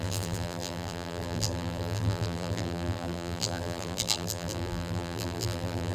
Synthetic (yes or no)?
yes